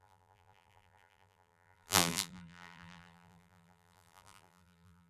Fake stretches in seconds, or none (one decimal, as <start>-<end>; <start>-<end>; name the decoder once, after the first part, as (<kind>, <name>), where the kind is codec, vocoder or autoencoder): 0.0-5.1 (vocoder, BigVGAN v2)